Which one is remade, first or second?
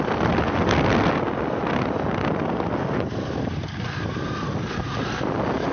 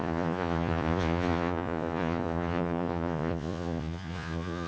second